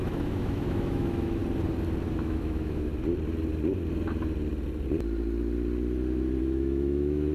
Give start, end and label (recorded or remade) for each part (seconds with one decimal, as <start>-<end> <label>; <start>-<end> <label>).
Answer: 0.0-1.4 remade; 1.4-2.1 recorded; 2.1-2.9 remade; 2.9-6.4 recorded; 6.4-7.3 remade